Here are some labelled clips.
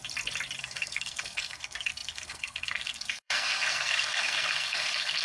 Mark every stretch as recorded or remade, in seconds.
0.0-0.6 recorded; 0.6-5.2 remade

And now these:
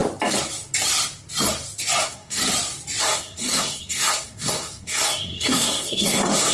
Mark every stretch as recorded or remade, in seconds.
0.0-2.0 recorded; 2.0-2.4 remade; 2.4-3.0 recorded; 3.0-6.5 remade

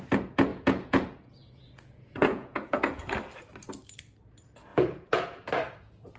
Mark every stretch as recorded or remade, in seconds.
0.0-0.5 recorded; 0.5-3.1 remade; 3.1-4.7 recorded; 4.7-5.5 remade; 5.5-6.2 recorded

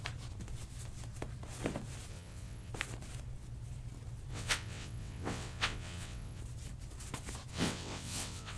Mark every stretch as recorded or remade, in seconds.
0.0-2.1 recorded; 2.1-2.7 remade; 2.7-4.3 recorded; 4.3-6.4 remade; 6.4-7.5 recorded; 7.5-8.6 remade

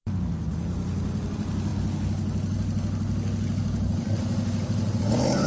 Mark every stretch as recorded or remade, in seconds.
0.0-5.5 recorded

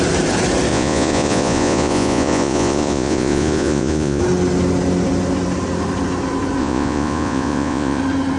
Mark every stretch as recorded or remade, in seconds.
0.0-0.7 recorded; 0.7-4.2 remade; 4.2-6.6 recorded; 6.6-8.0 remade; 8.0-8.4 recorded

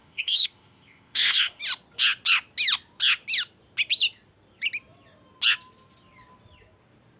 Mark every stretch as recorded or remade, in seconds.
0.0-1.6 remade; 1.6-7.2 recorded